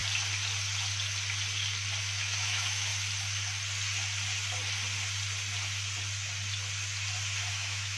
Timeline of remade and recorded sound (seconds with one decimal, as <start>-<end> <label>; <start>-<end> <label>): 0.0-2.0 recorded; 2.0-2.9 remade; 2.9-7.5 recorded; 7.5-8.0 remade